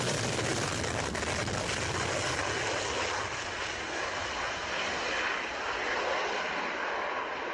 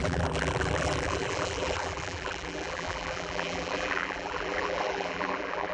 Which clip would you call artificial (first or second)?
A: second